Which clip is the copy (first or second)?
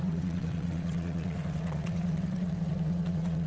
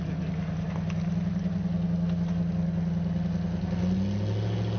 first